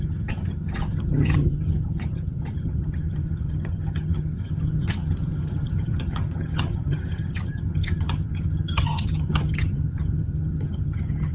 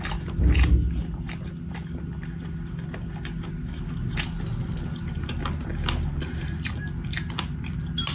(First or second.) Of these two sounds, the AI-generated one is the first